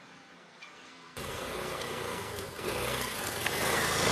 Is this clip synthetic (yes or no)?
yes